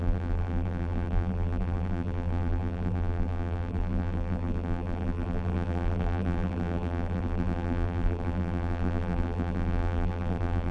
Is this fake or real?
fake